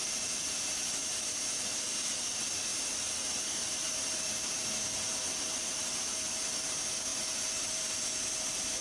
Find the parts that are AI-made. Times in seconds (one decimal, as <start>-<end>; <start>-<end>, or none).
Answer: 0.0-8.8